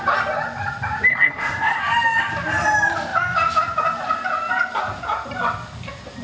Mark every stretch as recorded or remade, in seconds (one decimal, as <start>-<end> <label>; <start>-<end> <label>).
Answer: 0.0-1.1 recorded; 1.1-1.8 remade; 1.8-6.2 recorded